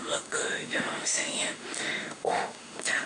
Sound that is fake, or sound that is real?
fake